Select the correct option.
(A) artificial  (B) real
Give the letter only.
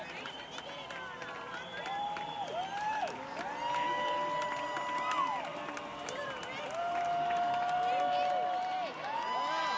B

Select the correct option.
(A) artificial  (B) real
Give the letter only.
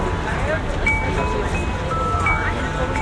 B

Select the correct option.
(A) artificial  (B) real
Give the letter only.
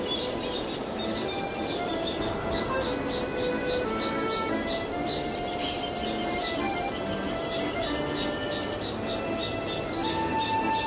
B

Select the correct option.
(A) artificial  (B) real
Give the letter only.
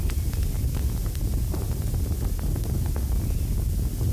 B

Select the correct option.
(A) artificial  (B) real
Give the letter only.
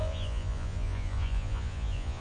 A